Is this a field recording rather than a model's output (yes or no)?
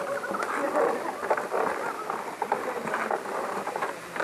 yes